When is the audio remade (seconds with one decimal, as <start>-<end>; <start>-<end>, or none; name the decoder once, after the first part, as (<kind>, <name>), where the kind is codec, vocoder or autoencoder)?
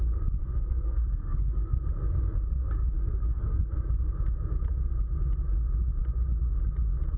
0.4-1.8 (codec, SNAC); 3.0-3.6